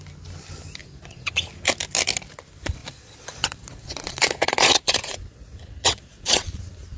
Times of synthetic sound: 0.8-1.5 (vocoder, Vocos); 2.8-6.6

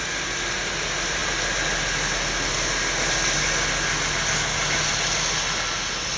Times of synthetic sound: none

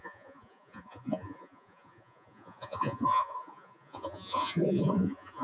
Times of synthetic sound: 0.0-5.4 (vocoder, Vocos)